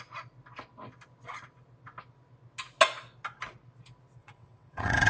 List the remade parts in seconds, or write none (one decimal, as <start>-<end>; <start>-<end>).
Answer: 4.2-5.1